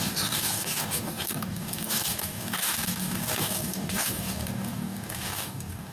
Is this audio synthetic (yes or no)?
yes